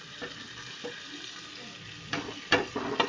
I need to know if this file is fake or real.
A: real